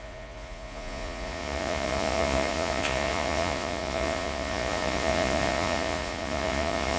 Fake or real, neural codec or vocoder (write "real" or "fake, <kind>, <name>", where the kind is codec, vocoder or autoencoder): fake, vocoder, Vocos